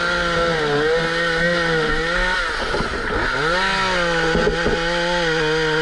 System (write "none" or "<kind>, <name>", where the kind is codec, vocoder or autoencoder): none